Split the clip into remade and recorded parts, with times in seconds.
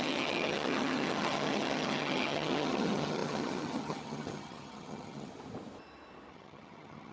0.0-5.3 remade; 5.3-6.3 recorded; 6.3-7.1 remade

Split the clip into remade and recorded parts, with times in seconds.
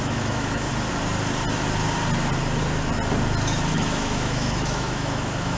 0.0-0.7 remade; 0.7-3.7 recorded; 3.7-5.6 remade